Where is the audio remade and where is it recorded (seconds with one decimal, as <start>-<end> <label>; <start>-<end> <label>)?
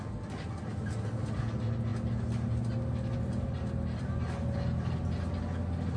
0.0-6.0 recorded